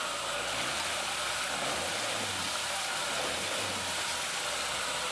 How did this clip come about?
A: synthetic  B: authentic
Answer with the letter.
B